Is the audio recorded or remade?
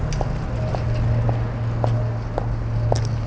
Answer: recorded